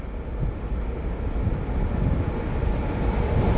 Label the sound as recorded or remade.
recorded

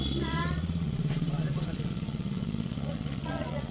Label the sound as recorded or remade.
remade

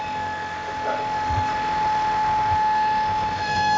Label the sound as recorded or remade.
remade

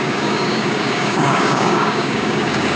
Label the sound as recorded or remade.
remade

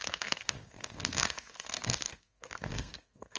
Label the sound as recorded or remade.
remade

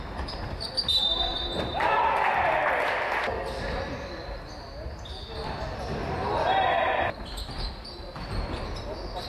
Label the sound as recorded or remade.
recorded